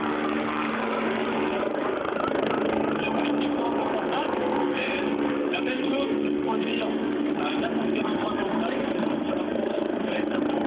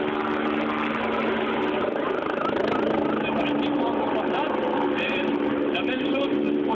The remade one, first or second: first